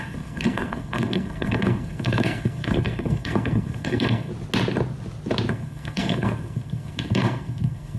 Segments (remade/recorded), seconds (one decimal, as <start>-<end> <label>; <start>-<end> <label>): 0.0-4.3 remade; 4.3-5.5 recorded; 5.5-8.0 remade